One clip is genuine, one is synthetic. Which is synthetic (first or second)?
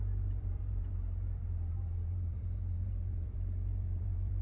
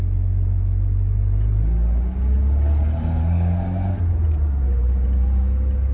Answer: first